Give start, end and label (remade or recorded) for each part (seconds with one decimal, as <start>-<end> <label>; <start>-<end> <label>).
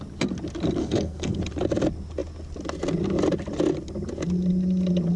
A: 0.0-0.8 recorded; 0.8-1.4 remade; 1.4-5.2 recorded